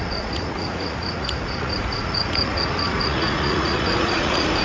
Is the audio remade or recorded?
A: remade